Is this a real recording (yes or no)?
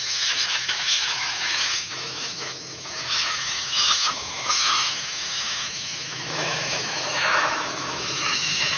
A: no